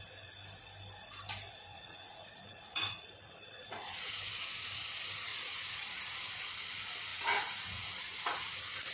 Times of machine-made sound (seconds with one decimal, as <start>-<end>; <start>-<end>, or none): 1.7-4.1; 5.3-6.0; 7.1-8.9